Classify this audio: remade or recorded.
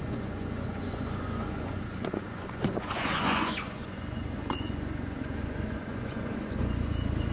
remade